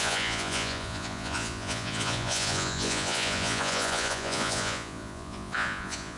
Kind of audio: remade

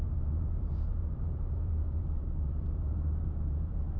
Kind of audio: remade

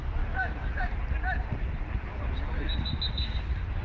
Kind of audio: recorded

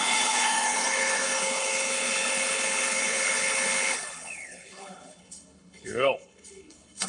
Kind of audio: remade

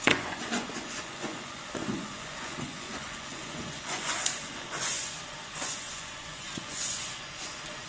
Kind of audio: remade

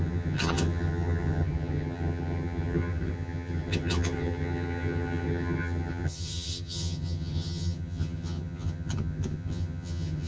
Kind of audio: remade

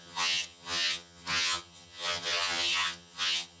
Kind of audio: remade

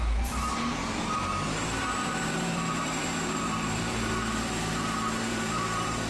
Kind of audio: remade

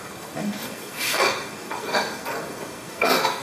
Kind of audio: remade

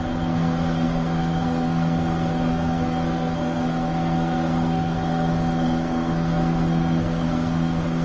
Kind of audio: remade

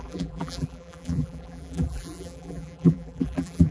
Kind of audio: remade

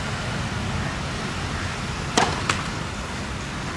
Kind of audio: recorded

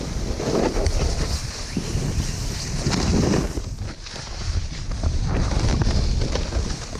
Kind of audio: recorded